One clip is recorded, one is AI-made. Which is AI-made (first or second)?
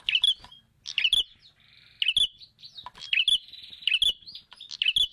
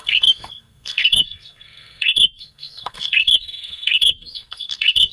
second